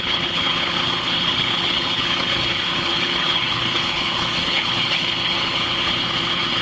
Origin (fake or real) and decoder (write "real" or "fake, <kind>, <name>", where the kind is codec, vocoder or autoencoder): fake, codec, HILCodec